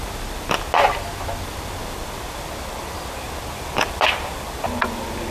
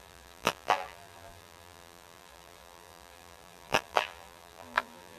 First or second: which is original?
first